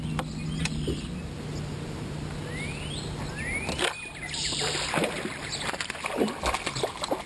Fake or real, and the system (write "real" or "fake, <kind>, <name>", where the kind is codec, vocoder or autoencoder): real